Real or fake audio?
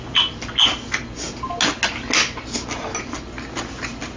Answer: real